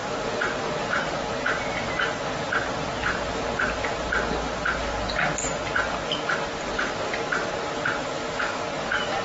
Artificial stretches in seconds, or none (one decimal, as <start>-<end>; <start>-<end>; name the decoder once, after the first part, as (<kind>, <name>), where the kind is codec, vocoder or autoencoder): 8.0-8.6 (autoencoder, DAC-VAE)